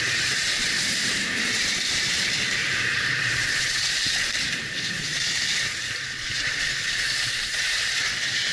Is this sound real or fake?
fake